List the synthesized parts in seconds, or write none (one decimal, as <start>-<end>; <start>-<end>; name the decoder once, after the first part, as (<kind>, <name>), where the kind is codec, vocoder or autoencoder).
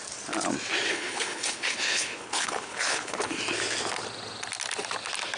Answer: 0.9-3.4 (codec, HILCodec)